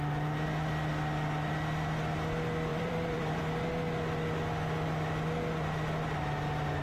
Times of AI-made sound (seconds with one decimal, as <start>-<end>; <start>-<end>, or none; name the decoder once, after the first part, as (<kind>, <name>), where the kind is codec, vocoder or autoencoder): 2.7-3.4 (vocoder, BigVGAN v2)